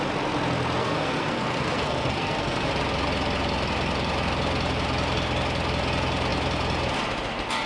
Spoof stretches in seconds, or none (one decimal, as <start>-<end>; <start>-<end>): 0.8-2.7